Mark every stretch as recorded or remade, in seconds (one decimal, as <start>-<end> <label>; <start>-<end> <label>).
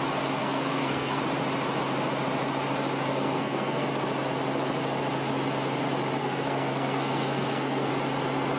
0.0-0.4 recorded; 0.4-1.2 remade; 1.2-3.1 recorded; 3.1-3.9 remade; 3.9-6.2 recorded; 6.2-7.9 remade; 7.9-8.6 recorded